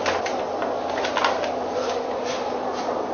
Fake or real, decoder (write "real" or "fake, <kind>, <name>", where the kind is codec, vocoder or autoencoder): real